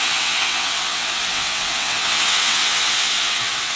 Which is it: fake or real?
fake